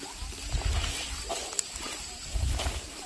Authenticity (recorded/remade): recorded